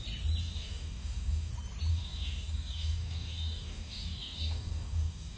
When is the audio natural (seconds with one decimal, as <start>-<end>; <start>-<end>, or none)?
0.0-0.4; 1.5-1.9